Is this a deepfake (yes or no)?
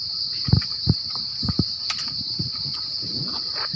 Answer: yes